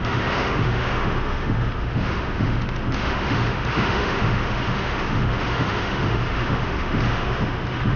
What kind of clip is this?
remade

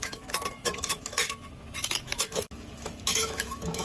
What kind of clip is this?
remade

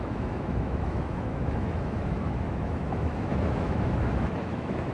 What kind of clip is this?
remade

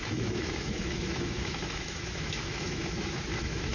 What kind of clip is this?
remade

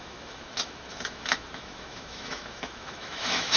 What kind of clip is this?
remade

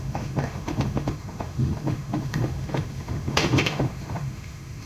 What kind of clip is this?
remade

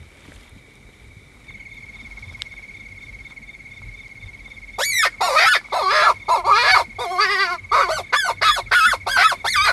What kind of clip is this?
recorded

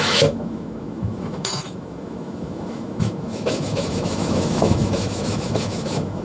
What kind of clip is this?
remade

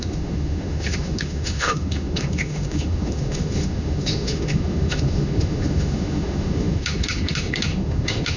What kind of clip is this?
remade